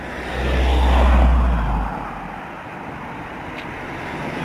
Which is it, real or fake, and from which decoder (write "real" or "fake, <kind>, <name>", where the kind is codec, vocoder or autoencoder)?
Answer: real